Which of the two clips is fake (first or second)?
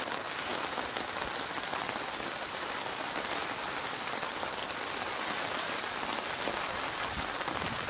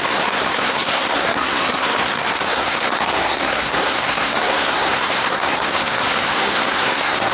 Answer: second